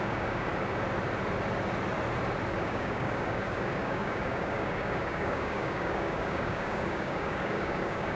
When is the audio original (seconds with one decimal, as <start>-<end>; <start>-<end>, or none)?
0.5-2.6